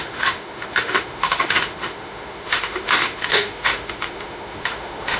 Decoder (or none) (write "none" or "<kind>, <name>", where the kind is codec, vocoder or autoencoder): autoencoder, DAC-VAE